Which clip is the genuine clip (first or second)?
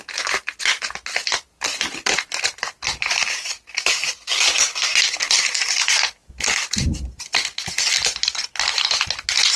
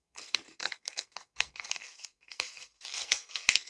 first